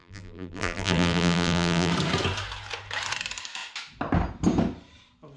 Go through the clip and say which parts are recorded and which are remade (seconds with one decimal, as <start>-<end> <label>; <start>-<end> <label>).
0.0-1.9 remade; 1.9-5.4 recorded